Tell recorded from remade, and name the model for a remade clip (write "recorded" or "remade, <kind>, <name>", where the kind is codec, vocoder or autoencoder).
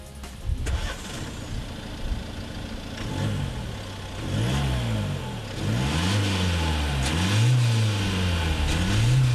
recorded